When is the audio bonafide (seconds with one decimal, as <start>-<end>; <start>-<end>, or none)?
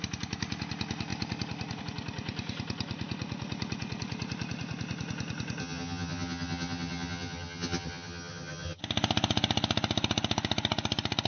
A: 0.0-5.6; 8.8-11.3